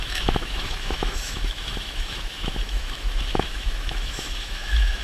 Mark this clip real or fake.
fake